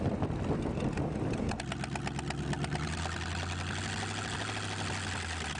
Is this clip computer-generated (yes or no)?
no